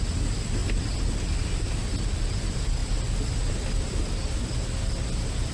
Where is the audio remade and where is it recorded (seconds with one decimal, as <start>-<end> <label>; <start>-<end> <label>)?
0.0-5.5 recorded